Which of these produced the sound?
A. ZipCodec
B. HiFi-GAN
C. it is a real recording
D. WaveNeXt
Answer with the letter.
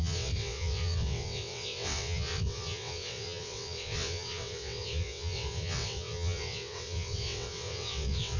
D